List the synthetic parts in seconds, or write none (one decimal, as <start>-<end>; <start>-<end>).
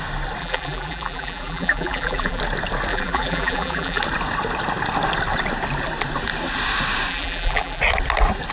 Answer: 0.4-2.4; 2.9-4.0; 7.1-7.8